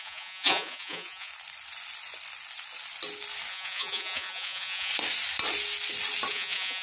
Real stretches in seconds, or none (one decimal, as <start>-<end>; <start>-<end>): 1.3-3.5; 4.9-6.3